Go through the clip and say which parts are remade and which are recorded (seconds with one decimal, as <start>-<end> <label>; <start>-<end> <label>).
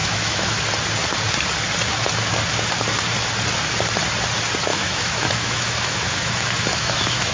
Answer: 0.0-0.6 remade; 0.6-4.7 recorded; 4.7-7.3 remade